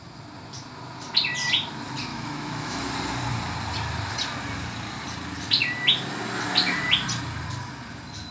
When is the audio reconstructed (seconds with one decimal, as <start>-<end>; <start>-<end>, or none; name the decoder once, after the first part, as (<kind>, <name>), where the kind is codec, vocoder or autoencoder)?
2.1-2.9 (autoencoder, DAC-VAE)